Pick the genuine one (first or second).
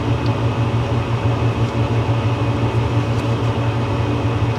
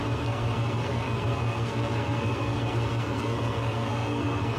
first